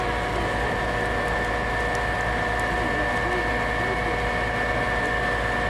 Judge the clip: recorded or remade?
recorded